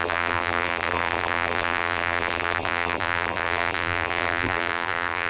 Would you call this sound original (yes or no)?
no